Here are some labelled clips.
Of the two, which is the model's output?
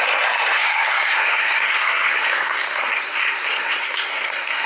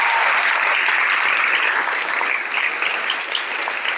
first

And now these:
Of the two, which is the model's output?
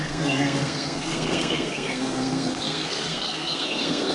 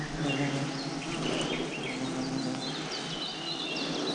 first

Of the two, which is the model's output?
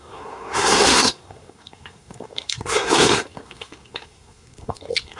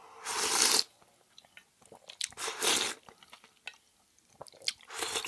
first